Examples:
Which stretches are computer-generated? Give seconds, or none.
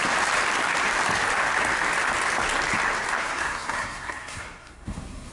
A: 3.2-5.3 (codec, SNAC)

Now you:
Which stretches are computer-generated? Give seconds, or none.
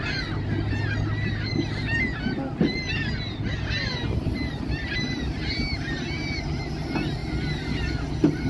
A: none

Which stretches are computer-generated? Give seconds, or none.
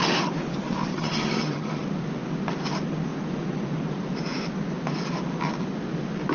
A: 0.9-1.8 (vocoder, HiFi-GAN)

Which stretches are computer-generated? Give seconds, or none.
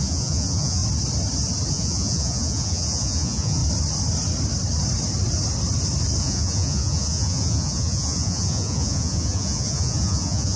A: 0.0-0.8 (vocoder, Vocos); 1.7-3.6; 6.2-10.6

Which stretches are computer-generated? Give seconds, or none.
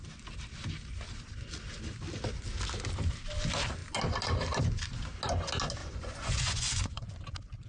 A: 5.8-7.1 (vocoder, Vocos)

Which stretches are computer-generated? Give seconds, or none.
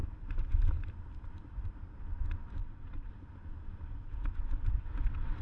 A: 2.6-3.1 (vocoder, WaveNeXt); 3.9-5.4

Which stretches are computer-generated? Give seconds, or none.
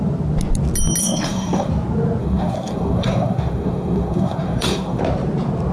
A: 1.0-1.7 (codec, SNAC); 2.2-5.0